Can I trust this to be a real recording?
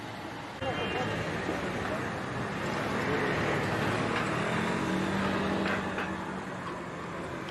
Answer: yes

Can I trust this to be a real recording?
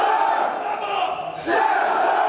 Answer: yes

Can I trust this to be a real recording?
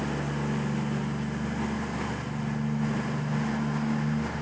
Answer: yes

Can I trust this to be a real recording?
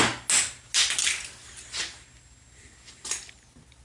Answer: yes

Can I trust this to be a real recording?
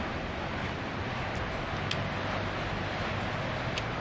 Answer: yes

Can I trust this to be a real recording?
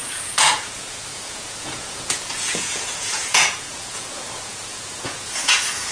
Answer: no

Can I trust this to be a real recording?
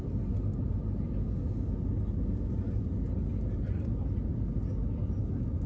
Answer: yes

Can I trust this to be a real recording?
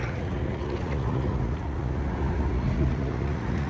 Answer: no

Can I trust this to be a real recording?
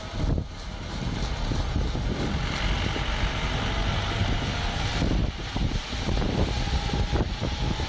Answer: yes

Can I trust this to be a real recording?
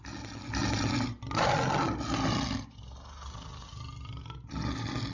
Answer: yes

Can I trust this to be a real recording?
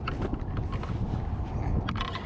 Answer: yes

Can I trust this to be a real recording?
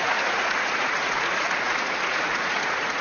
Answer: no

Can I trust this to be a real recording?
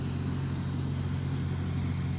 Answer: yes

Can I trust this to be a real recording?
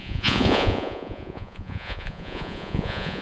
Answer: no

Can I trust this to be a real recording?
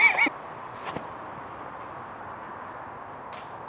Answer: yes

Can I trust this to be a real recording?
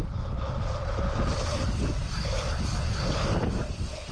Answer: yes